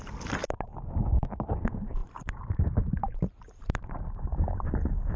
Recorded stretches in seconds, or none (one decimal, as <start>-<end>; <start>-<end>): 0.0-0.4; 1.3-2.0; 4.7-5.2